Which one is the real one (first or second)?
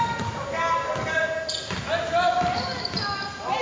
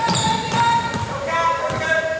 first